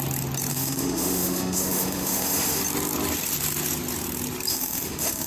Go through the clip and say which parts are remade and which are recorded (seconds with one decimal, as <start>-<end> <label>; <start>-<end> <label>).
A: 0.0-0.5 recorded; 0.5-2.6 remade; 2.6-4.5 recorded; 4.5-5.3 remade